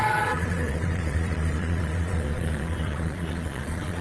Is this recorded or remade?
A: remade